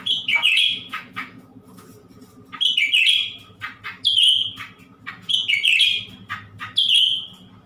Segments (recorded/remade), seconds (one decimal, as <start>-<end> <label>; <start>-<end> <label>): 0.0-1.5 remade; 1.5-5.1 recorded; 5.1-5.7 remade; 5.7-7.7 recorded